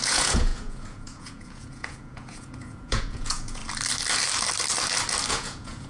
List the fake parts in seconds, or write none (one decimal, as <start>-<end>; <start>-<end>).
0.0-3.6; 5.3-5.9